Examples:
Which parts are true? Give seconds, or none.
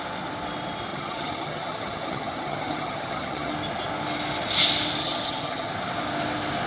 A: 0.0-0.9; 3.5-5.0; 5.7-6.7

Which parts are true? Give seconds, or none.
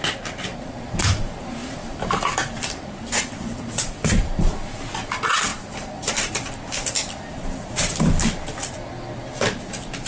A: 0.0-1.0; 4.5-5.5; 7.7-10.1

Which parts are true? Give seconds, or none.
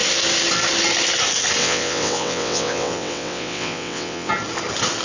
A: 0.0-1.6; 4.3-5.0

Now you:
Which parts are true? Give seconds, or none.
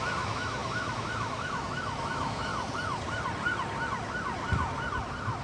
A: 2.5-5.4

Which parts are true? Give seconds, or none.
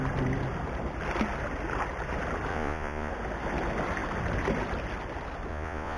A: 0.0-2.5; 3.1-5.5